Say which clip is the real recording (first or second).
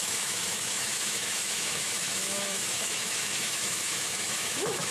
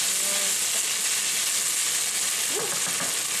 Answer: second